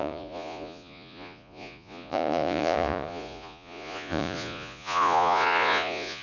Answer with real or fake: fake